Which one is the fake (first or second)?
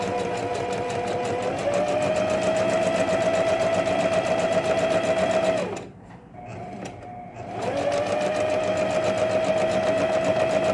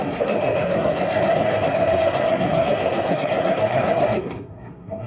second